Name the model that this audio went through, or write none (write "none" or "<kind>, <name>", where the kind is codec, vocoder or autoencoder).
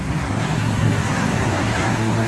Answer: codec, SNAC